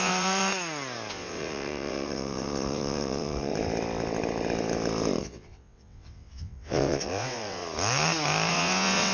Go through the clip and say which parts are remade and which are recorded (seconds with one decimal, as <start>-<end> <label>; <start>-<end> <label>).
0.0-0.5 remade; 0.5-1.1 recorded; 1.1-3.5 remade; 3.5-5.2 recorded; 5.2-7.6 remade; 7.6-8.5 recorded; 8.5-9.1 remade